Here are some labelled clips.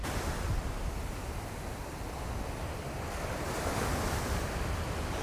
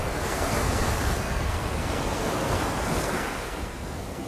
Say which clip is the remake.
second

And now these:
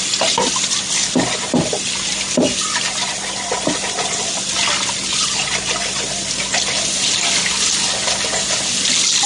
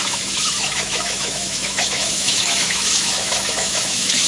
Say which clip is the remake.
second